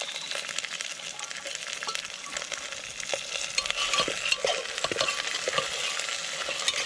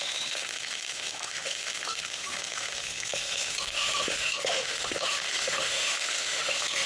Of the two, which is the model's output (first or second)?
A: second